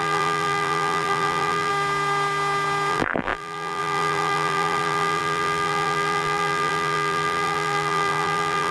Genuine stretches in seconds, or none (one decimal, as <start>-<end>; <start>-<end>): 1.7-2.9